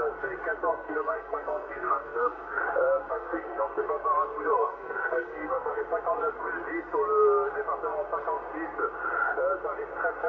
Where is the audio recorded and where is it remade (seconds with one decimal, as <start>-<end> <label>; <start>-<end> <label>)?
0.0-0.7 recorded; 0.7-2.6 remade; 2.6-3.1 recorded; 3.1-3.8 remade; 3.8-4.5 recorded; 4.5-5.8 remade; 5.8-10.3 recorded

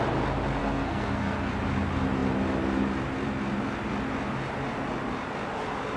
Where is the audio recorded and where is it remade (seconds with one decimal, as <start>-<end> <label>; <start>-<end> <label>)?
0.0-0.6 recorded; 0.6-1.5 remade; 1.5-6.0 recorded

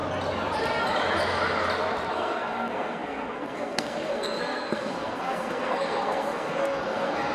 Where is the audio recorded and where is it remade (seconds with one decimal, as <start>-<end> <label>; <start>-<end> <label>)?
0.0-2.1 recorded; 2.1-7.3 remade

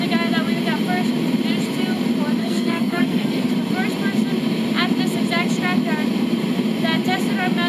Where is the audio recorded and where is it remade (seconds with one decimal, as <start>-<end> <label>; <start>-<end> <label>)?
0.0-2.4 recorded; 2.4-3.5 remade; 3.5-7.7 recorded